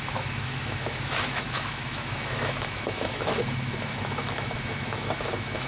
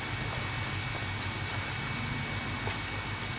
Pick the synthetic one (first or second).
first